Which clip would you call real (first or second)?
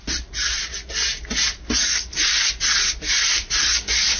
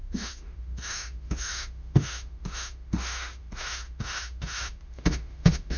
first